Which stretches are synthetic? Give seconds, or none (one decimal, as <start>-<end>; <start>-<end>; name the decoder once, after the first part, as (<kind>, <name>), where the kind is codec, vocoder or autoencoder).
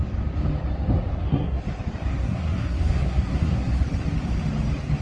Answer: 1.1-1.6 (codec, SNAC); 2.2-3.7